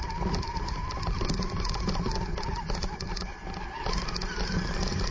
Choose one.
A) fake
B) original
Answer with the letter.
B